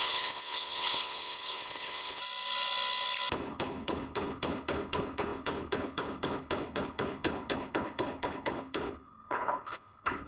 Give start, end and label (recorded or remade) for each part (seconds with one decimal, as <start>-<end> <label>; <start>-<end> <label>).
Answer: 0.0-2.2 remade; 2.2-3.3 recorded; 3.3-10.3 remade